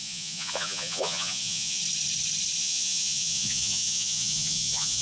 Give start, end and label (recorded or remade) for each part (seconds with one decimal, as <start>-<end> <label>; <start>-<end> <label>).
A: 0.0-1.8 remade; 1.8-2.6 recorded; 2.6-5.0 remade